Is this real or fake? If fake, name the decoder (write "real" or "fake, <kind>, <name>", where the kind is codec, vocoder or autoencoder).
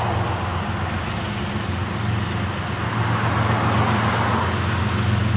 real